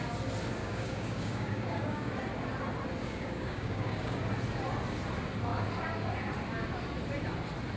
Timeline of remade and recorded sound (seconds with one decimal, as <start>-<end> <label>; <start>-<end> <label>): 0.0-0.6 recorded; 0.6-2.1 remade; 2.1-3.0 recorded; 3.0-4.2 remade; 4.2-7.8 recorded